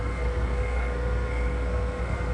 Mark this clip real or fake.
fake